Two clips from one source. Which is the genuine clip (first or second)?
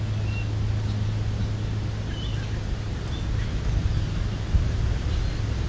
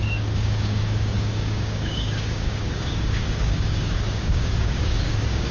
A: first